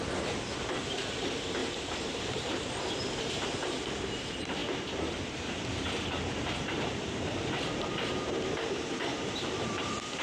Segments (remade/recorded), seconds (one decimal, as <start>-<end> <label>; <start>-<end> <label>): 0.0-10.2 remade